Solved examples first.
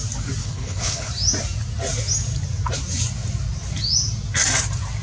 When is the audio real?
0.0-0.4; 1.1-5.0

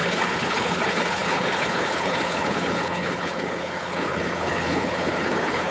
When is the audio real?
none

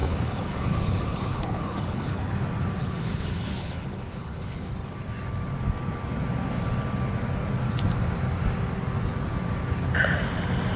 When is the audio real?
2.2-2.8; 4.7-10.8